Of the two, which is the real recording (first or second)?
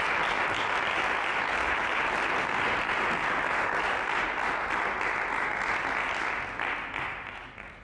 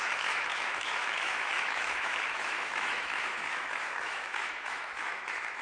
first